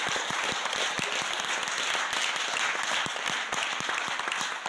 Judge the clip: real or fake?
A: real